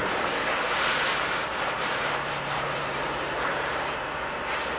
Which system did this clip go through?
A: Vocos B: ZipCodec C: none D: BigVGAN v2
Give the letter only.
D